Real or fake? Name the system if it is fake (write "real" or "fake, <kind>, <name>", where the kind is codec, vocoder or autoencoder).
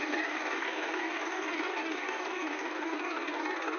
fake, codec, DAC